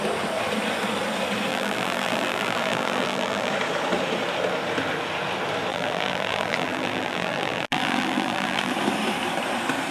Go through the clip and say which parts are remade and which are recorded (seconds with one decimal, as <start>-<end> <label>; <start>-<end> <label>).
0.0-1.5 recorded; 1.5-3.5 remade; 3.5-5.7 recorded; 5.7-8.7 remade; 8.7-9.9 recorded